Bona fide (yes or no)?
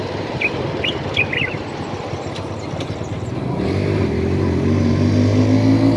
yes